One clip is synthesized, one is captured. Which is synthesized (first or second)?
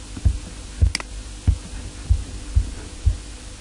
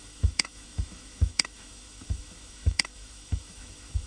second